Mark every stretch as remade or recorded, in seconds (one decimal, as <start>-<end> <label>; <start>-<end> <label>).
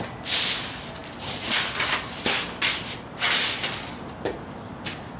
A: 0.0-5.2 recorded